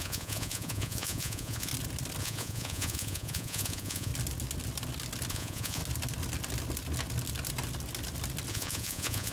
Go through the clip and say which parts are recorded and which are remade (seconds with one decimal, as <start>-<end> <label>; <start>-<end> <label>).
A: 0.0-1.7 remade; 1.7-2.2 recorded; 2.2-4.1 remade; 4.1-5.3 recorded; 5.3-5.8 remade; 5.8-8.5 recorded; 8.5-9.3 remade